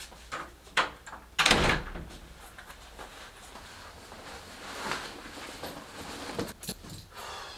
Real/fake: real